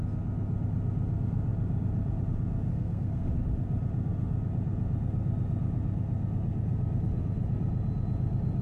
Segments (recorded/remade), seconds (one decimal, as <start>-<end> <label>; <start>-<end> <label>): 0.0-2.7 recorded; 2.7-3.3 remade; 3.3-8.6 recorded